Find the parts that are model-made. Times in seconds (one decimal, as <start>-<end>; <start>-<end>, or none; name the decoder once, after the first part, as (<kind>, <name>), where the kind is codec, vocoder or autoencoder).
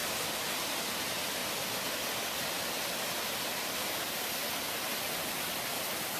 none